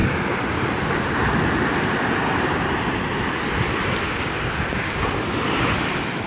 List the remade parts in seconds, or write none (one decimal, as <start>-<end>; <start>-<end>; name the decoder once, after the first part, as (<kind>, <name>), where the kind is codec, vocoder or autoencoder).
none